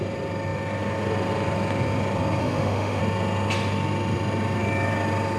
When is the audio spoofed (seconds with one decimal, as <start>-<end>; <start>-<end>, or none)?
2.4-3.0

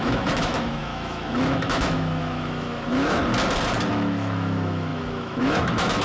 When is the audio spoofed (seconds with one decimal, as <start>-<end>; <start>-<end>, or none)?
0.0-3.2; 3.9-6.0

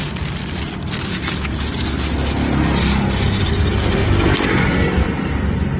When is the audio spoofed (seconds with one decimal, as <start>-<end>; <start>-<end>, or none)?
3.5-5.8

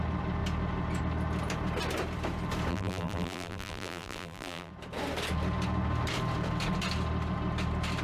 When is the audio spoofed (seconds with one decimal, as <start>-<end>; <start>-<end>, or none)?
2.7-4.7

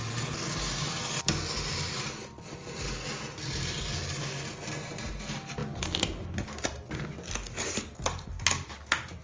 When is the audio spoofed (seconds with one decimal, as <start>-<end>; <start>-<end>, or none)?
none